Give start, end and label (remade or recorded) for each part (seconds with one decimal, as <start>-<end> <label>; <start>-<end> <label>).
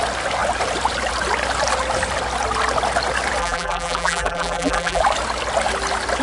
0.0-3.4 recorded; 3.4-5.0 remade; 5.0-6.2 recorded